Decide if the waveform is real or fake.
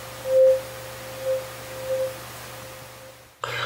real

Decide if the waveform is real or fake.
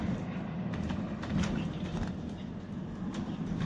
real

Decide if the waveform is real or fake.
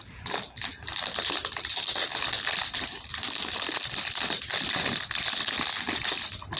real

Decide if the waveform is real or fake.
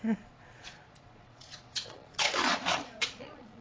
fake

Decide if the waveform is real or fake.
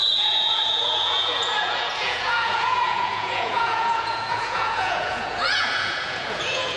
fake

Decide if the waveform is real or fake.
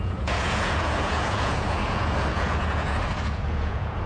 fake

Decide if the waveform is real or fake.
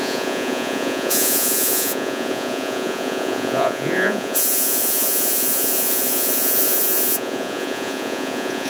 fake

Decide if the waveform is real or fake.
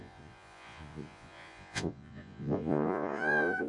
fake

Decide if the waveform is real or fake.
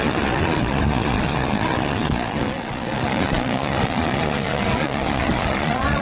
fake